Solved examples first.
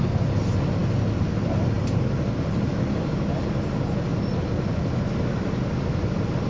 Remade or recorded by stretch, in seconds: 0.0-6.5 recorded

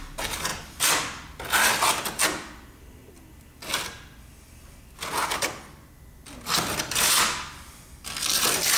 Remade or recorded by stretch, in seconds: 0.0-8.8 recorded

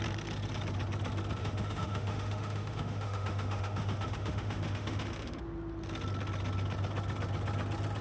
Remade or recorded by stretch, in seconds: 0.0-1.4 recorded; 1.4-5.4 remade; 5.4-8.0 recorded

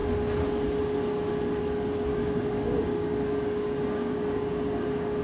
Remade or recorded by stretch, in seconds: 0.0-2.1 recorded; 2.1-5.2 remade

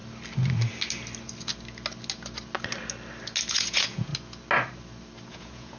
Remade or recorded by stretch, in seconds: 0.0-3.5 recorded; 3.5-4.1 remade; 4.1-5.3 recorded; 5.3-5.8 remade